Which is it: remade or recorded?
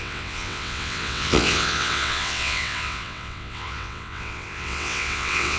remade